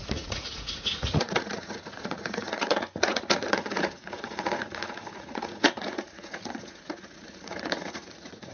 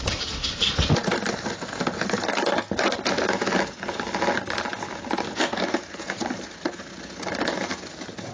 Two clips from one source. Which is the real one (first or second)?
second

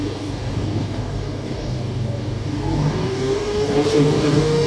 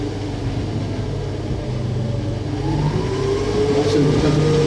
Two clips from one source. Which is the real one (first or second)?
second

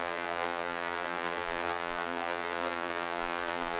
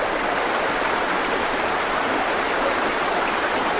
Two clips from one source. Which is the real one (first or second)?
second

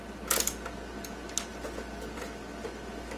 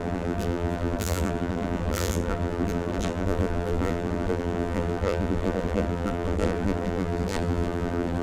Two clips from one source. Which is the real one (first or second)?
first